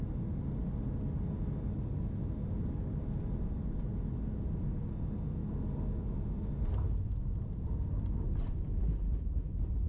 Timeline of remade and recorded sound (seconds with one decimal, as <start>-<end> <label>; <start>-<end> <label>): 0.0-9.9 recorded